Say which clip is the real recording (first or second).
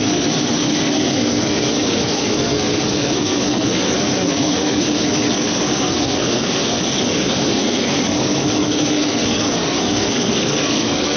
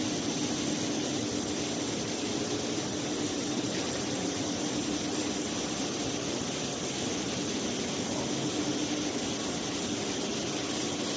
second